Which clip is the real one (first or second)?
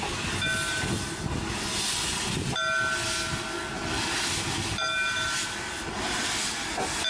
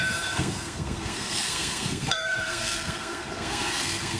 first